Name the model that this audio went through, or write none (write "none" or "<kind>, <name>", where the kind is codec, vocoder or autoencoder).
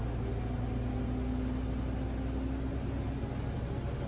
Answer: none